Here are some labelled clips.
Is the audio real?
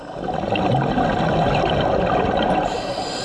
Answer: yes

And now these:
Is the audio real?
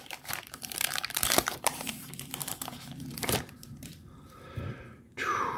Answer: no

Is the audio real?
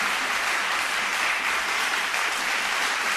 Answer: no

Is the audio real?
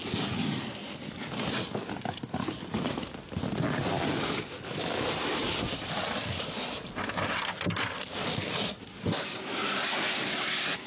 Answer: yes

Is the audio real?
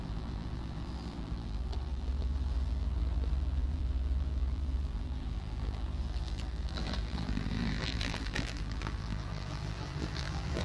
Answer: no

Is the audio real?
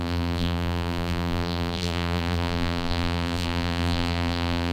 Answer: no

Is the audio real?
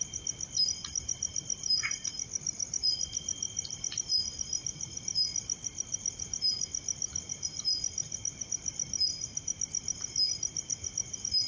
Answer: yes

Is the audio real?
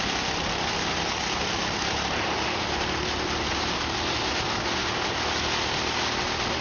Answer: yes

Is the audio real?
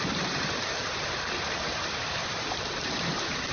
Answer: no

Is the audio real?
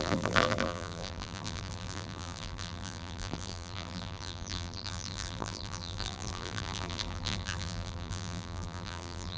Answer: no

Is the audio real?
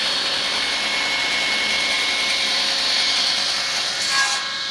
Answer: yes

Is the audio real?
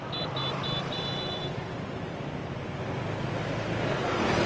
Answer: yes